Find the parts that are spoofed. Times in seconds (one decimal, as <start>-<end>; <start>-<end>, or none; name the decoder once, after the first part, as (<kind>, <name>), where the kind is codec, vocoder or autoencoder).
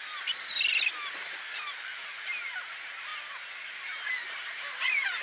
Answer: none